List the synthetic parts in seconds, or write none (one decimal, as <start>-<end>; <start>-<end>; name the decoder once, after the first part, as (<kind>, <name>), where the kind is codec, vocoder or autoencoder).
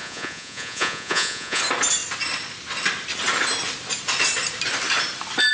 0.0-1.6 (vocoder, Vocos)